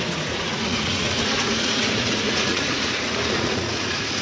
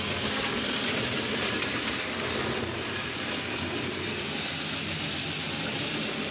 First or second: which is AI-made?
first